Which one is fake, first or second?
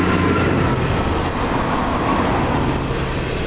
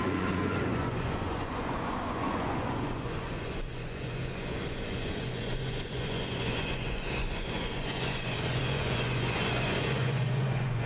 second